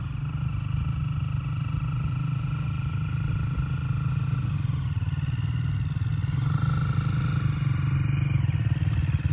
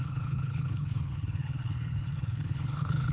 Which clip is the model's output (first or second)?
second